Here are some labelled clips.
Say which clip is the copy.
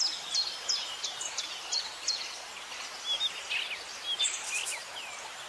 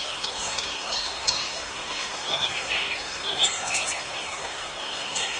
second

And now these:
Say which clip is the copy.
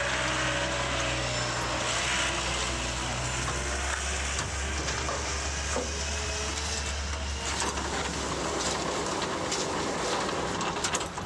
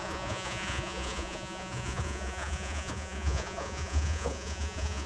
second